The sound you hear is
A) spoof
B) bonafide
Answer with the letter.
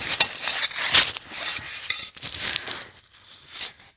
B